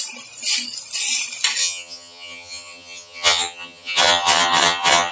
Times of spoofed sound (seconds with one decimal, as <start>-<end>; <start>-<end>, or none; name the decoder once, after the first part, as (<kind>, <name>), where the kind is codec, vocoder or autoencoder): 1.6-5.1 (vocoder, HiFi-GAN)